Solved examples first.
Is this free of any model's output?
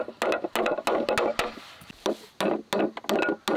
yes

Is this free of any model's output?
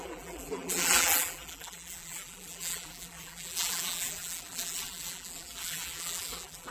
no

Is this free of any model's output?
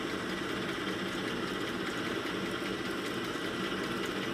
yes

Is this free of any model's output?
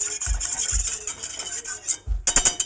yes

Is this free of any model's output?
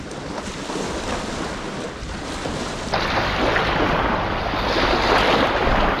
yes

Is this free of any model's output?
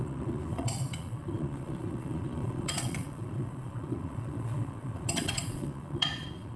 no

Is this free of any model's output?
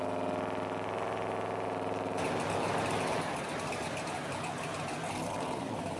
yes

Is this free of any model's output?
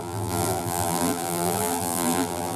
no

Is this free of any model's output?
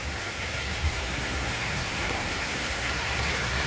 no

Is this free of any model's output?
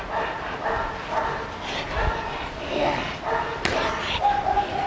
yes